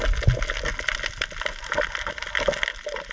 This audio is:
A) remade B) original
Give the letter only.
B